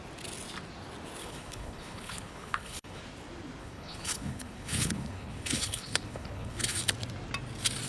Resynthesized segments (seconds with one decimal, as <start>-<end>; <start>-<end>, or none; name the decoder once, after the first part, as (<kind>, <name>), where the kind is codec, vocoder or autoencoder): 1.2-3.0 (codec, HILCodec); 3.6-6.8